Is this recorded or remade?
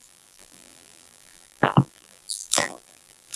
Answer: remade